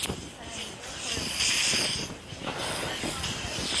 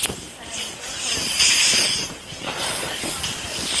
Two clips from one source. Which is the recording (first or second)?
first